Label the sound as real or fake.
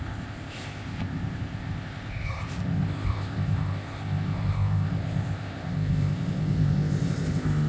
fake